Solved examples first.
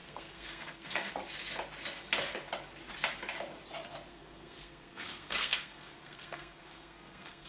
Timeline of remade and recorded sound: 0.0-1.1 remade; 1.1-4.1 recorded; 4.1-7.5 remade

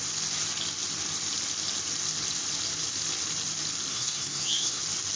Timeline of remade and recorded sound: 0.0-3.9 recorded; 3.9-4.8 remade; 4.8-5.2 recorded

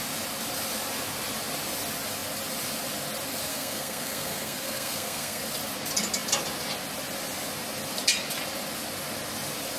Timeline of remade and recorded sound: 0.0-3.5 recorded; 3.5-5.4 remade; 5.4-9.8 recorded

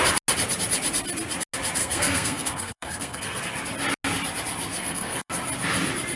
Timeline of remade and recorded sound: 0.0-1.8 recorded; 1.8-3.4 remade; 3.4-4.7 recorded; 4.7-5.3 remade; 5.3-6.2 recorded

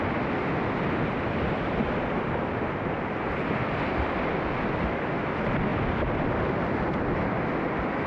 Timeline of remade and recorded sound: 0.0-8.1 recorded

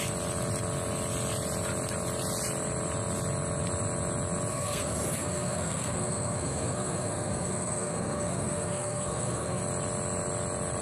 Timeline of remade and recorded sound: 0.0-4.5 recorded; 4.5-9.6 remade; 9.6-10.8 recorded